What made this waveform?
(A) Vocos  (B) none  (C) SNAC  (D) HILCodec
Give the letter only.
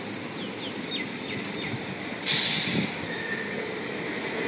B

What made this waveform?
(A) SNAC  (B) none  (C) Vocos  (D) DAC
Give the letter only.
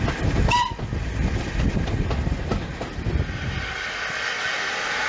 B